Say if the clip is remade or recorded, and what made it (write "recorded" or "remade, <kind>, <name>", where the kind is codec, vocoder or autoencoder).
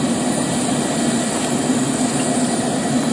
recorded